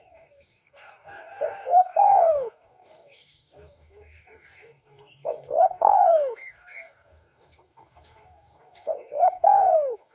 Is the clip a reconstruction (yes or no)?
yes